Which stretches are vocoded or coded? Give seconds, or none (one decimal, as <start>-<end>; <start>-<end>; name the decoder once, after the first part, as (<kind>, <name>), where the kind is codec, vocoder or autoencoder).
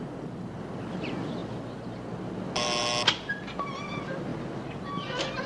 none